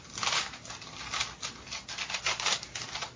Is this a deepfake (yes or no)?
no